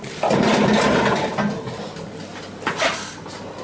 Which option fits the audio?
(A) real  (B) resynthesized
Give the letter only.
A